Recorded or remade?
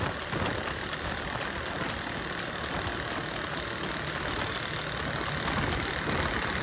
recorded